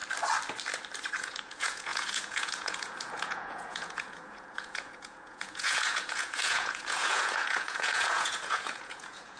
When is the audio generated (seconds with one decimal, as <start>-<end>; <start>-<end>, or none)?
1.1-9.4